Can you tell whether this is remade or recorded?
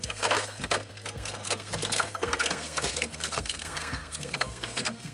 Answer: remade